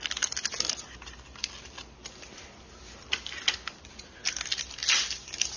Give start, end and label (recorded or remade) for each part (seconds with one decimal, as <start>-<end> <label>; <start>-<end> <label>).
0.0-5.6 recorded